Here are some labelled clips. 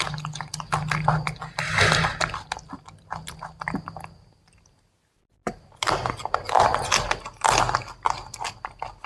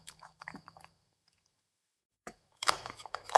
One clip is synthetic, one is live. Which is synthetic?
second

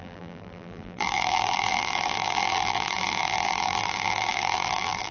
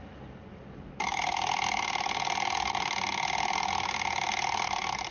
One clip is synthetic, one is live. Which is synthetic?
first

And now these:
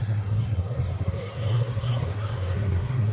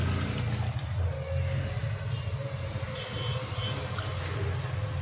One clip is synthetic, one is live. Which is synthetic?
first